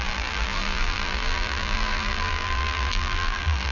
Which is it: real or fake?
fake